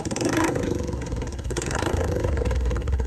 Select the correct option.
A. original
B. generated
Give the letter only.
B